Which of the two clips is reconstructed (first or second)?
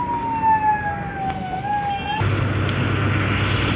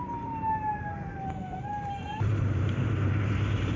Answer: second